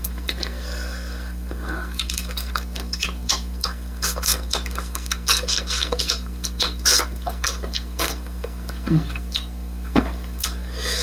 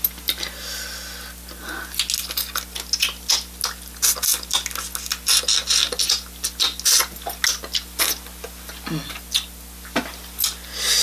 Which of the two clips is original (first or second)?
second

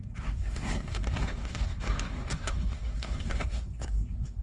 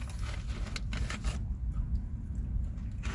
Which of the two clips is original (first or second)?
second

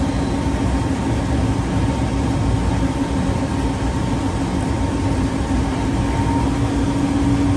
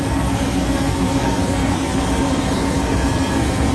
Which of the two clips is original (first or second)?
first